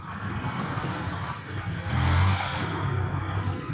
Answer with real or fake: fake